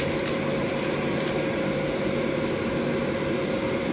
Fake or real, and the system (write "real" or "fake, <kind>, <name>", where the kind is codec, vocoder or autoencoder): real